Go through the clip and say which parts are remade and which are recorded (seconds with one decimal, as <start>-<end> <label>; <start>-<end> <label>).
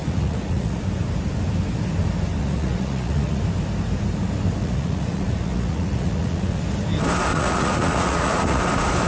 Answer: 0.0-0.8 remade; 0.8-2.4 recorded; 2.4-3.4 remade; 3.4-4.6 recorded; 4.6-6.6 remade; 6.6-7.3 recorded; 7.3-8.6 remade; 8.6-9.1 recorded